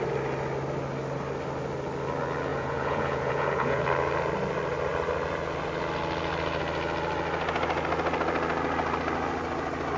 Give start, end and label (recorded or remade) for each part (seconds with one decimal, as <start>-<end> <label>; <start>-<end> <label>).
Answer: 0.0-2.5 recorded; 2.5-3.8 remade; 3.8-10.0 recorded